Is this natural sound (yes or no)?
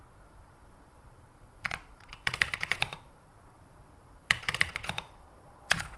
no